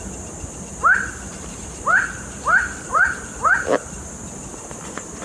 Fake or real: real